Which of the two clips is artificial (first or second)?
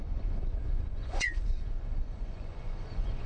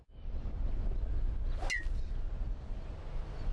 first